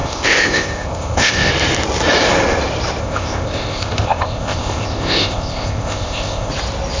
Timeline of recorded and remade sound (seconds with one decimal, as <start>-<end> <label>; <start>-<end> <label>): 0.0-1.5 remade; 1.5-3.0 recorded; 3.0-6.5 remade; 6.5-7.0 recorded